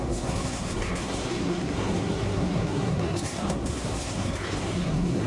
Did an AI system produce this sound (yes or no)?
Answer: yes